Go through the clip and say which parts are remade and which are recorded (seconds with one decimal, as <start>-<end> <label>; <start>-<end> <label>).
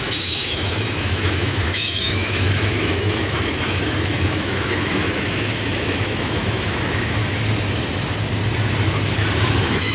0.0-7.2 remade; 7.2-9.5 recorded; 9.5-9.9 remade